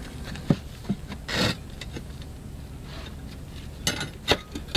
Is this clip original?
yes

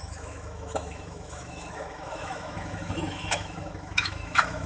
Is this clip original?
no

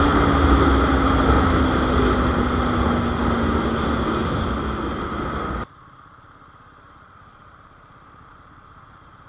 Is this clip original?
yes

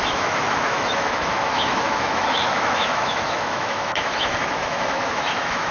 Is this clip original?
no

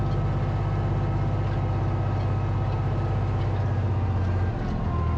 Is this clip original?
yes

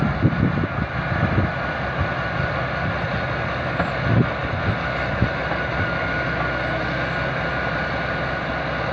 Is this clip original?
yes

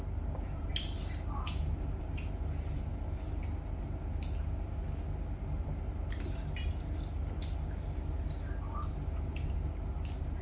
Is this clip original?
yes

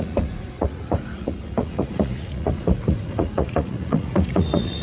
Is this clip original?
no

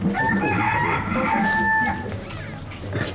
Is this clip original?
yes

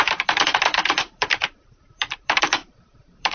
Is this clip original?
no